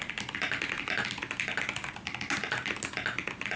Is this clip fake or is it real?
real